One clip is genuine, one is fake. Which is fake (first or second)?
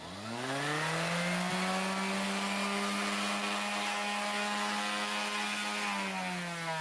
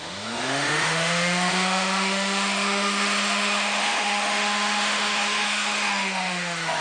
second